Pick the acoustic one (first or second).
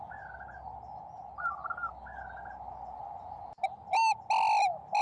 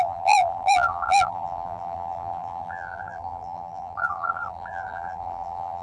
first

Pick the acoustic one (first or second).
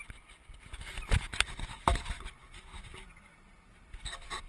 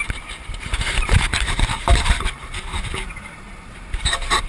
first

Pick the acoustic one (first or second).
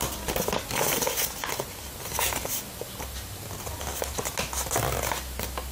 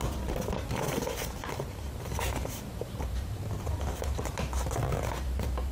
first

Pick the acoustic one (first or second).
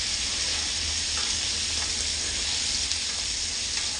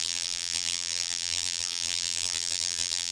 first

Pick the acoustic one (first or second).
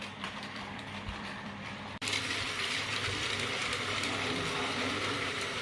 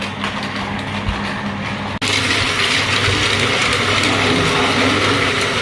second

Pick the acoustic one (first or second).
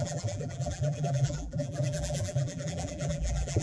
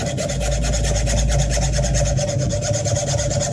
second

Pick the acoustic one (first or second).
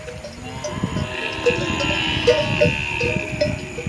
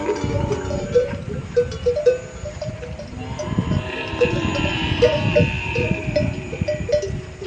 first